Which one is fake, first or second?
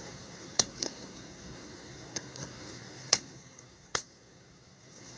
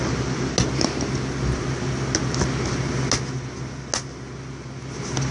first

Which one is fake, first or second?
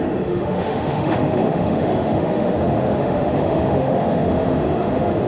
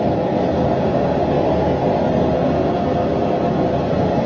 first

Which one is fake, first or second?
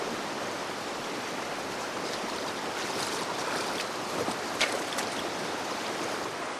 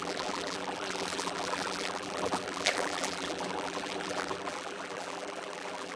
second